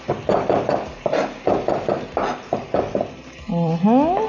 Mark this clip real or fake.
real